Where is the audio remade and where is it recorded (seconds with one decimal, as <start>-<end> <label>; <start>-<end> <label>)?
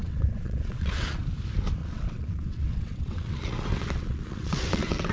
0.0-1.2 remade; 1.2-1.8 recorded; 1.8-5.1 remade